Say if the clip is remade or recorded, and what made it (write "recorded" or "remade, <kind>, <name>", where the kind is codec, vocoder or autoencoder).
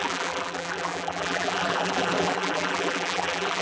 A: remade, vocoder, BigVGAN v2